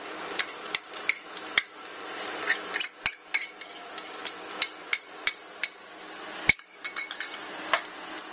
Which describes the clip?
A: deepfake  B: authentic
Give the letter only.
B